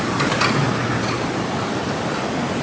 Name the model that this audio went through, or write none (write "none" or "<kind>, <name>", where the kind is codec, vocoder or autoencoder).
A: none